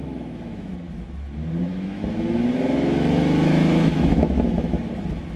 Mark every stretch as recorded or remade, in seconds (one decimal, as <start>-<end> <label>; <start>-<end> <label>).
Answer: 0.0-0.7 remade; 0.7-1.6 recorded; 1.6-4.8 remade; 4.8-5.4 recorded